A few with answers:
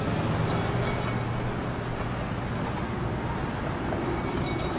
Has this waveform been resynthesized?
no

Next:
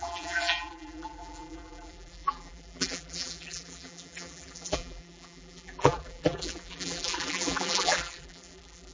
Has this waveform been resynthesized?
yes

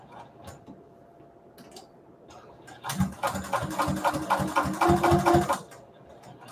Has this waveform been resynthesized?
no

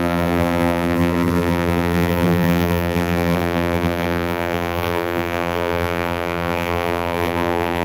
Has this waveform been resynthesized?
yes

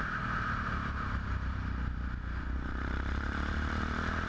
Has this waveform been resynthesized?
no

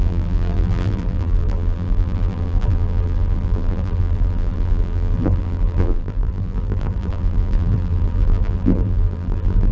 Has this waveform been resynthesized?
yes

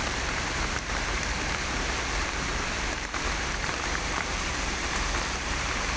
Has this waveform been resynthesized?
yes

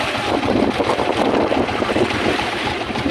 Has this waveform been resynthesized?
yes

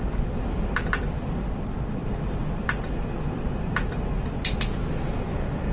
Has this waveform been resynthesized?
no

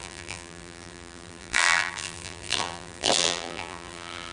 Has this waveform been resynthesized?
yes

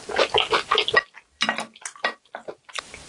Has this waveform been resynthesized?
no